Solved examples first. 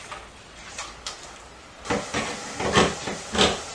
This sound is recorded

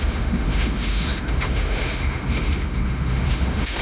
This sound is remade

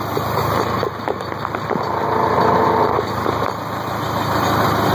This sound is recorded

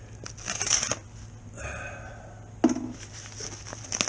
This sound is recorded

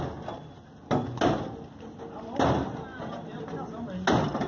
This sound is recorded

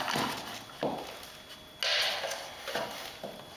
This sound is recorded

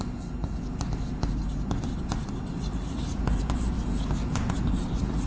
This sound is recorded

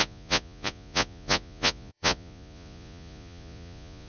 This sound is remade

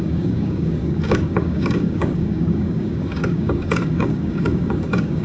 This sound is remade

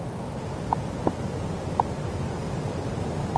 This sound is recorded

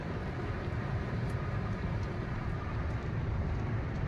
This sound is remade